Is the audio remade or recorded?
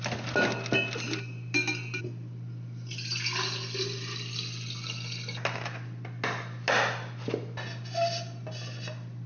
recorded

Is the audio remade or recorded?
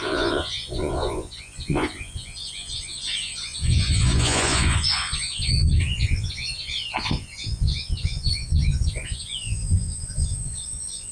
remade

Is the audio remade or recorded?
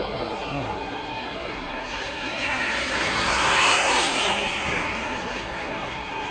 remade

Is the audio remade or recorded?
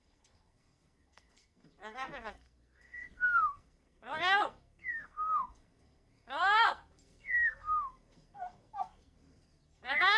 remade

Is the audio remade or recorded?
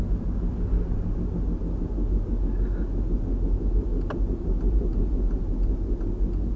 recorded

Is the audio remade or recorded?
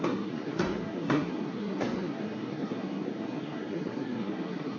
remade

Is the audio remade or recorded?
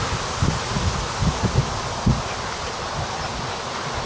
recorded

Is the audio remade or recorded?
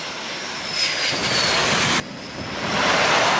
recorded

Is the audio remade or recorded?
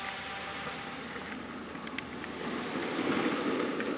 recorded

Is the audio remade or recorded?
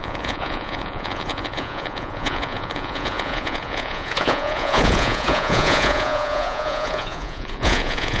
remade